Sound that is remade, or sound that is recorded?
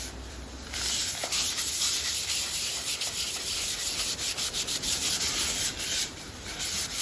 remade